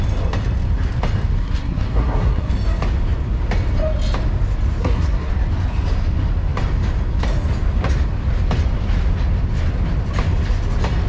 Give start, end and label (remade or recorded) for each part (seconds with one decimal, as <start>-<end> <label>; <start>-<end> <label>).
0.0-1.4 recorded; 1.4-2.5 remade; 2.5-4.8 recorded; 4.8-5.3 remade; 5.3-11.1 recorded